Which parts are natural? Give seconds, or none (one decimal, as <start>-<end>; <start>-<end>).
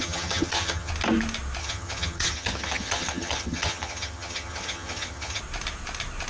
0.9-1.6; 5.4-6.3